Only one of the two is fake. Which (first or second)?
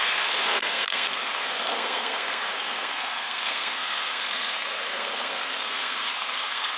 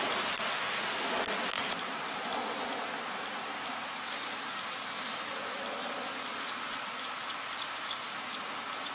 first